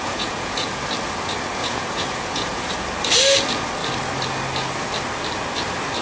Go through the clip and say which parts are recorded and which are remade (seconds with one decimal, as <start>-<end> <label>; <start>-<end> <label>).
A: 0.0-0.8 remade; 0.8-1.6 recorded; 1.6-2.7 remade; 2.7-6.0 recorded